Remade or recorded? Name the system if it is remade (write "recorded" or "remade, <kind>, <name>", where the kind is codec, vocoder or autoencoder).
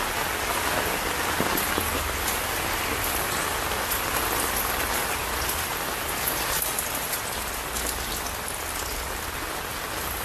recorded